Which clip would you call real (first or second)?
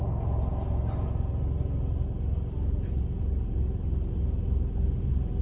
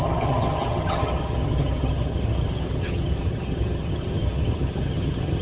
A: first